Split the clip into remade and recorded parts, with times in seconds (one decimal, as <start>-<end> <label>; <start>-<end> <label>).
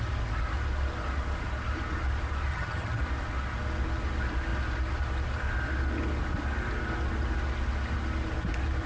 0.0-2.5 recorded; 2.5-3.0 remade; 3.0-8.9 recorded